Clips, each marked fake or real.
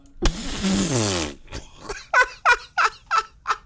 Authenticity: real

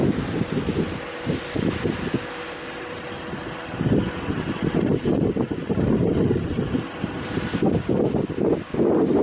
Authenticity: real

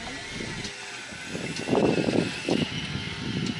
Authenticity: real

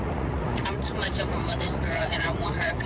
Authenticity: fake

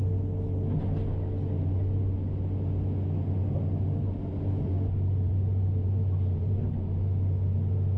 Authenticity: real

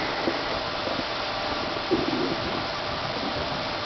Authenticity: real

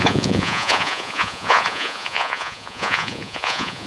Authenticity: fake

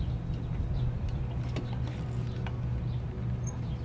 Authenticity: real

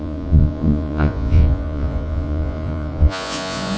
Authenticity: fake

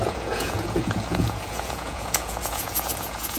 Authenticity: fake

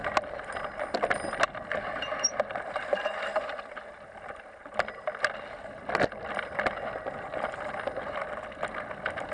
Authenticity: real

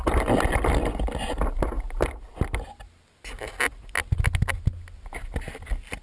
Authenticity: real